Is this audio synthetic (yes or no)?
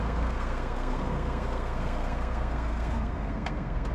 yes